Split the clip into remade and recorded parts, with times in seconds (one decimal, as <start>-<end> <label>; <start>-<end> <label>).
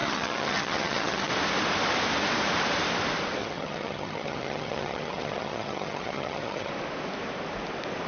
0.0-1.3 remade; 1.3-3.4 recorded; 3.4-6.7 remade; 6.7-8.1 recorded